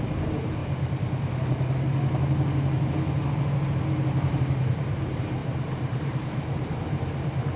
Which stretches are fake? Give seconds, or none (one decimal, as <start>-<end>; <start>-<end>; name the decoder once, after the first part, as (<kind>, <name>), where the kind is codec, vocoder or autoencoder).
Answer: 0.0-0.6 (vocoder, BigVGAN v2); 3.9-7.6